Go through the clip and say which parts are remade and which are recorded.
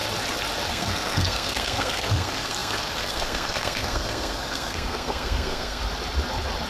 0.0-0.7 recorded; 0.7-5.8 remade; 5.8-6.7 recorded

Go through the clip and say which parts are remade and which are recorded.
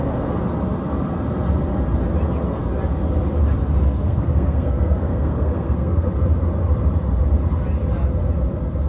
0.0-3.8 recorded; 3.8-6.1 remade; 6.1-8.9 recorded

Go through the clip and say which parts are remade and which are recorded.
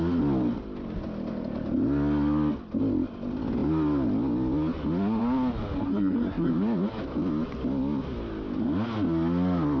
0.0-5.8 recorded; 5.8-6.5 remade; 6.5-9.8 recorded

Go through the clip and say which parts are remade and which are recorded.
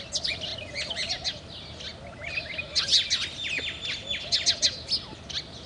0.0-5.7 recorded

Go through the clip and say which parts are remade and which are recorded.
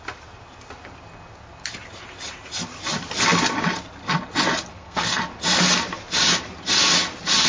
0.0-4.7 recorded; 4.7-5.2 remade; 5.2-7.5 recorded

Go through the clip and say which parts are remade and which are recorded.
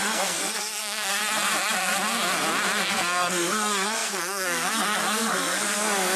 0.0-1.2 remade; 1.2-2.9 recorded; 2.9-6.2 remade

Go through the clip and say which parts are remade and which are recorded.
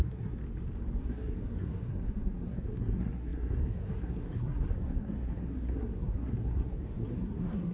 0.0-0.4 remade; 0.4-1.0 recorded; 1.0-7.7 remade